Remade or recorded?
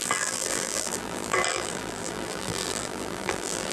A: remade